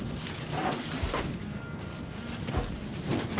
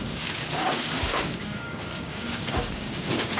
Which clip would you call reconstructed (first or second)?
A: second